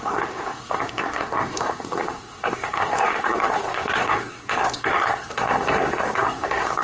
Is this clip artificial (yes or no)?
yes